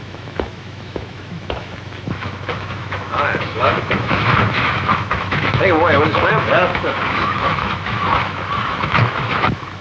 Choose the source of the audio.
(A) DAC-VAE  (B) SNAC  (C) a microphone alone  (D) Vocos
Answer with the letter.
A